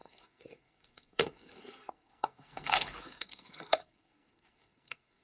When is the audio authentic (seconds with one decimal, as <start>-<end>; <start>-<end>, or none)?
none